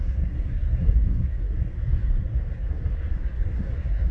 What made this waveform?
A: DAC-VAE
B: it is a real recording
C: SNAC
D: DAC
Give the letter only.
C